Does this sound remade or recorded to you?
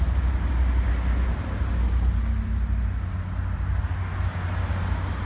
recorded